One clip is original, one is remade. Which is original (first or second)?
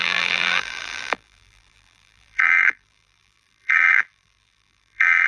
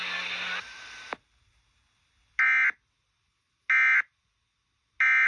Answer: second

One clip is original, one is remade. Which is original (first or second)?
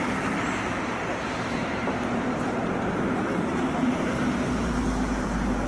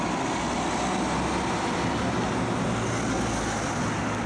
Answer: second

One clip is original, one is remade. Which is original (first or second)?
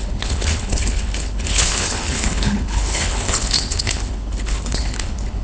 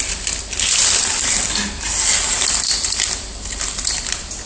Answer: second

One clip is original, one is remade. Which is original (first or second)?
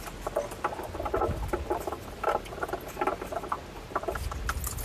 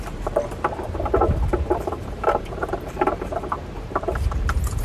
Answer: first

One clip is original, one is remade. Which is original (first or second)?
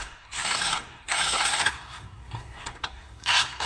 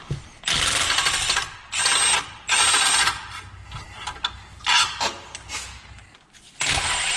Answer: second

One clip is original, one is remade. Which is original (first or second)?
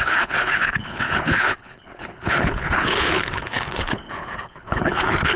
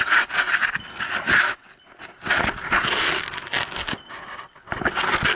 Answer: second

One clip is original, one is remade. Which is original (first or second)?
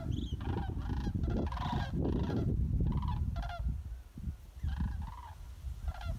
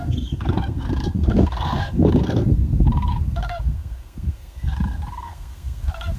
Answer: first